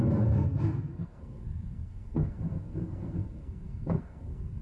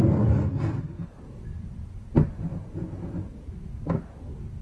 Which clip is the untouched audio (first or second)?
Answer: second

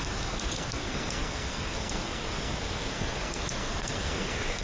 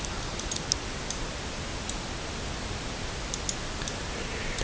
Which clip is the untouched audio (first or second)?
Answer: second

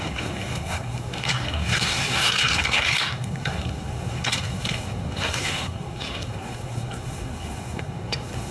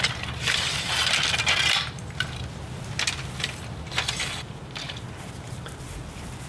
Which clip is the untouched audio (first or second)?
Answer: second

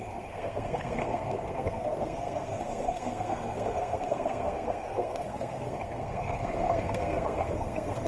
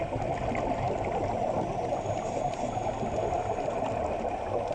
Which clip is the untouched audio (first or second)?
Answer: second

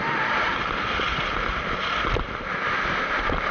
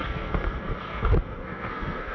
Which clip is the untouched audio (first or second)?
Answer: first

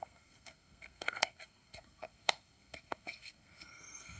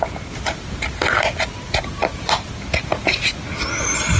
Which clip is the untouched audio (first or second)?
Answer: second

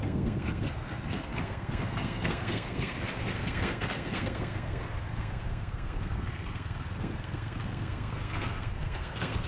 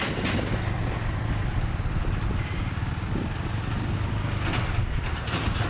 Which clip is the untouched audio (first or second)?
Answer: second